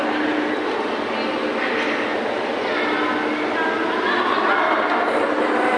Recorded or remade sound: recorded